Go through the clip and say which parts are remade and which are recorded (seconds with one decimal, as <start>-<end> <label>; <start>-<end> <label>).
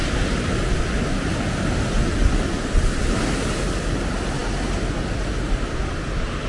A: 0.0-6.5 recorded